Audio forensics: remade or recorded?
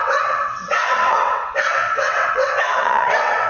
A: remade